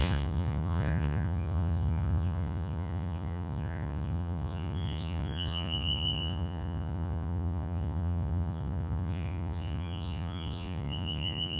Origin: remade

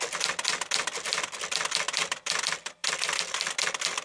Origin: recorded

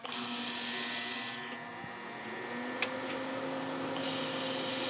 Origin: recorded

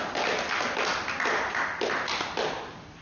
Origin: recorded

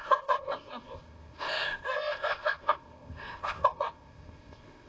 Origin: remade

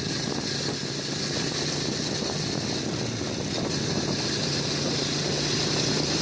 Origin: recorded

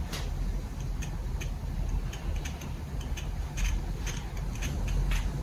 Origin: recorded